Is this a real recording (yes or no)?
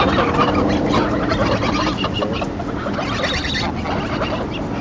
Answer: yes